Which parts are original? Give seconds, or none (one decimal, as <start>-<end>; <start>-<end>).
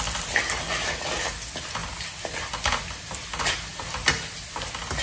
0.0-5.0